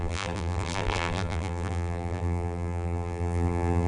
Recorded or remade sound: remade